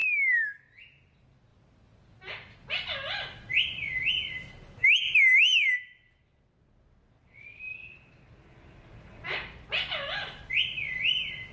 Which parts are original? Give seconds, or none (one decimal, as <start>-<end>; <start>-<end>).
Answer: 0.6-11.5